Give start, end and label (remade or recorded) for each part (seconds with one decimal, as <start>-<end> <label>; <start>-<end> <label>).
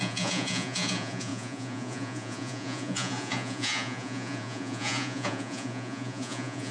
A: 0.0-6.7 remade